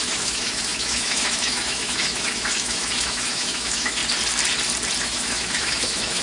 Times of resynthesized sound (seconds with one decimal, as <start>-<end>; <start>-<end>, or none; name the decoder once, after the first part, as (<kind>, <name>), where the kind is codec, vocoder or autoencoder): 0.0-4.0 (autoencoder, DAC-VAE); 5.0-6.2